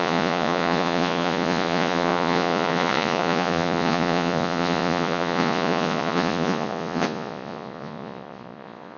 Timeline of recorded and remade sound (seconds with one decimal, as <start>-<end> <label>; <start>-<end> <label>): 0.0-9.0 remade